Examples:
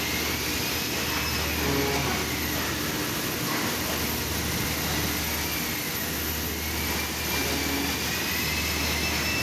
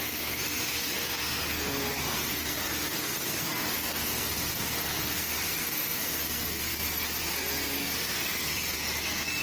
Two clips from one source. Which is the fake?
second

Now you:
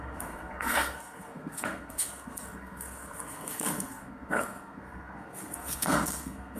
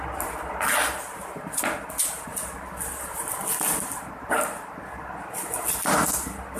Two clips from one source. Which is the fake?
first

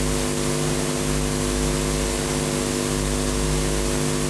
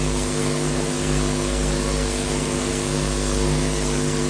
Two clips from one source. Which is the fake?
second